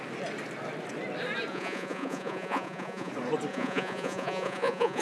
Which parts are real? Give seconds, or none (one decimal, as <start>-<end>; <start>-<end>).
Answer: 0.0-1.5; 3.1-3.5

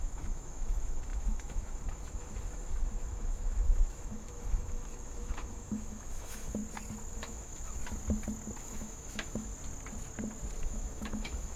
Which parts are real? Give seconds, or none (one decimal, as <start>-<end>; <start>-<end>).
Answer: 6.6-7.1; 7.8-8.6; 9.5-10.6

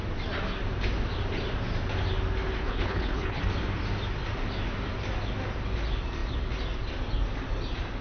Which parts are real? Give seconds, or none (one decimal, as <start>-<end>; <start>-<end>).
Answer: 0.0-2.6; 3.4-8.0

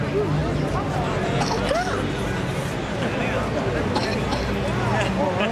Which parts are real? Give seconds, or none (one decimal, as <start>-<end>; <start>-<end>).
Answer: 0.0-5.5

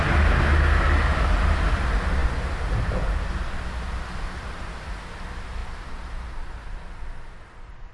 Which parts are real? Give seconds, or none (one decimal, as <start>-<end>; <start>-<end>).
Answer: 0.0-7.9

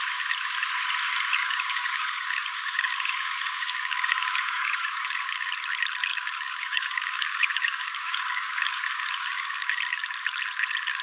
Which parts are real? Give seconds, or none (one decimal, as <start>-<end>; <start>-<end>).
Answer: 0.0-1.4; 5.5-6.1; 9.8-11.0